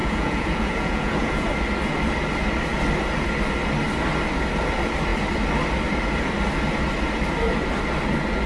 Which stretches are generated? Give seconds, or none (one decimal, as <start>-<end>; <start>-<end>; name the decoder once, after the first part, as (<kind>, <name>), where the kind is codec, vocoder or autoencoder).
0.0-1.5 (vocoder, Vocos)